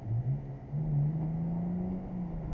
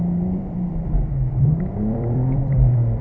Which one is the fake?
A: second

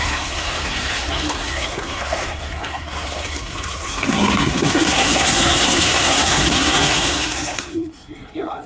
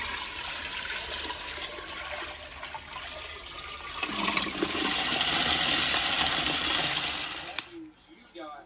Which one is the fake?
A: first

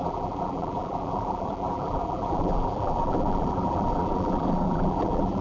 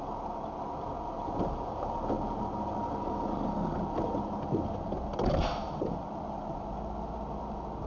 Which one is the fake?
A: first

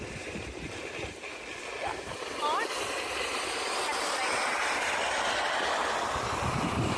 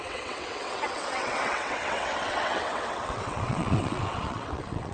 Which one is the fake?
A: second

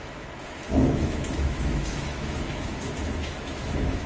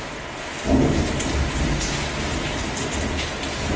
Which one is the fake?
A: first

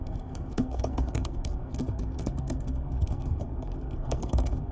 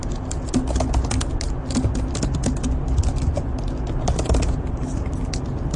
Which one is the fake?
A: first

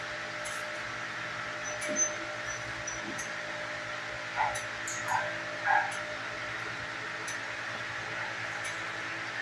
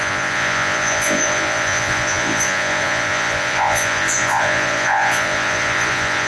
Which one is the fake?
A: second